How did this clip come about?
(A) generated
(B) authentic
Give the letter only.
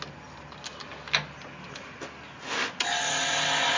B